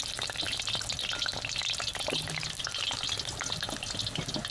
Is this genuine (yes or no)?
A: yes